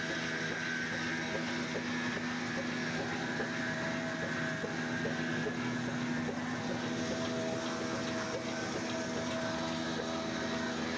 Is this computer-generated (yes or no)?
no